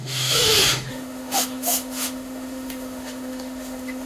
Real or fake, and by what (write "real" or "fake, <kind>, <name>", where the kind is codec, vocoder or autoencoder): fake, autoencoder, DAC-VAE